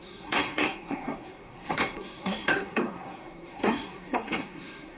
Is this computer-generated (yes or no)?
yes